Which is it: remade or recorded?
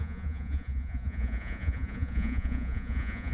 remade